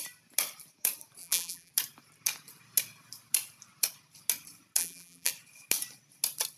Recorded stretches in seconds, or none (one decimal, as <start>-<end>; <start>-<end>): 0.0-1.2; 1.7-4.8; 5.3-6.6